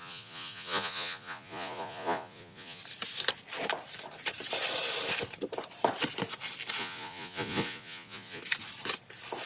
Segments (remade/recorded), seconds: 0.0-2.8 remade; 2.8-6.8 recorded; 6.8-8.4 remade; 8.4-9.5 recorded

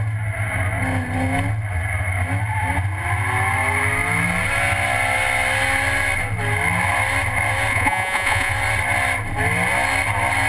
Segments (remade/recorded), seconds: 0.0-7.7 recorded; 7.7-8.5 remade; 8.5-10.5 recorded

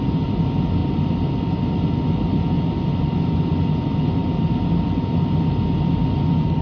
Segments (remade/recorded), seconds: 0.0-6.6 recorded

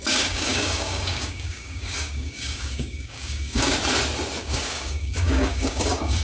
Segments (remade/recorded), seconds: 0.0-3.7 remade; 3.7-4.4 recorded; 4.4-6.2 remade